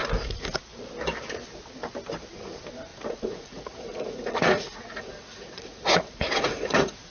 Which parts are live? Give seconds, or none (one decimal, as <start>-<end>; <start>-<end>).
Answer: 0.6-2.9